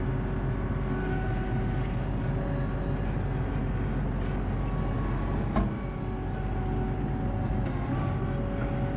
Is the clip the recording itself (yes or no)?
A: yes